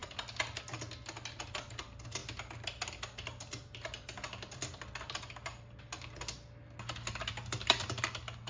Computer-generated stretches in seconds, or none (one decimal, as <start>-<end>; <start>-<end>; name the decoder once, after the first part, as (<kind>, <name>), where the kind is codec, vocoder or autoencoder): none